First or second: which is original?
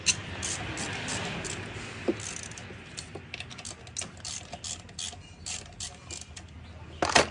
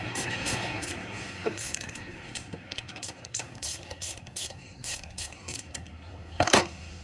first